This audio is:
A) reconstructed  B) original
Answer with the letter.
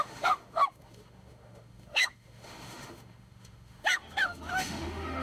A